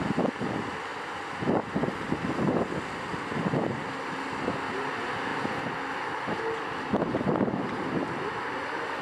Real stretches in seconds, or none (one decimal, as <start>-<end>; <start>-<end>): 0.0-9.0